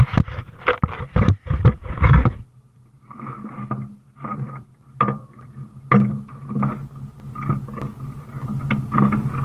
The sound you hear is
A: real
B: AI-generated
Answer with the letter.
A